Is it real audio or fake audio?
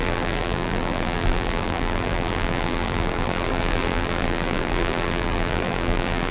fake